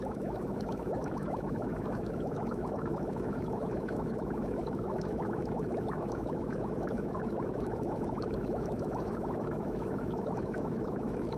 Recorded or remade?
remade